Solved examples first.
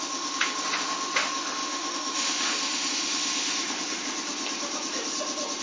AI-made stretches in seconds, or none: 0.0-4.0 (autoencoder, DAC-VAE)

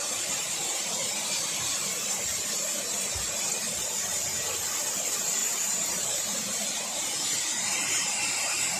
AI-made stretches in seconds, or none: 1.0-4.8 (vocoder, BigVGAN v2); 5.4-8.3

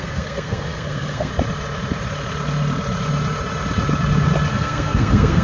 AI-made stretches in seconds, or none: 0.0-1.3 (codec, SNAC); 4.5-5.4

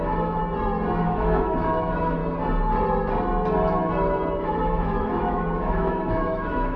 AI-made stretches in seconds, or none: 0.0-0.4 (autoencoder, DAC-VAE); 1.0-2.2; 4.4-6.8